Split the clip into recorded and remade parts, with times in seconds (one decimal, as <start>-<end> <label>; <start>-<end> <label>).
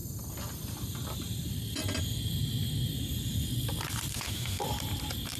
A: 0.0-4.1 recorded; 4.1-4.6 remade; 4.6-5.4 recorded